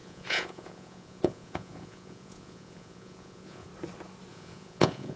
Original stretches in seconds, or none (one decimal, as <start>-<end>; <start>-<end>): 3.7-4.3